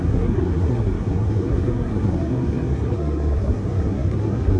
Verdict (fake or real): fake